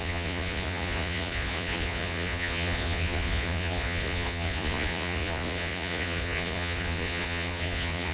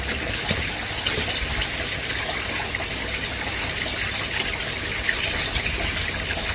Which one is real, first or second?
second